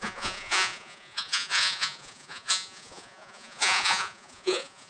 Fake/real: fake